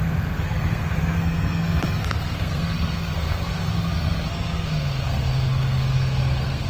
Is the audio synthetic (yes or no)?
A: yes